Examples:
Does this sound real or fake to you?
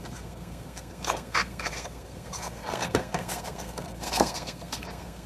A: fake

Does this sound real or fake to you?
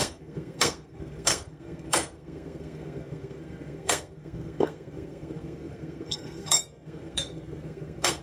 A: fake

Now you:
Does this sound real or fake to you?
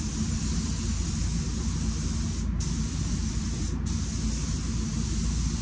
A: real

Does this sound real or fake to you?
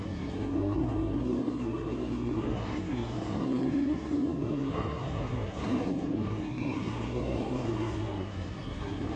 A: fake